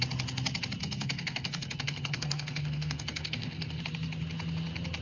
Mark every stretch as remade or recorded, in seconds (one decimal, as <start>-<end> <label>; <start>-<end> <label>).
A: 0.0-0.8 recorded; 0.8-3.8 remade; 3.8-5.0 recorded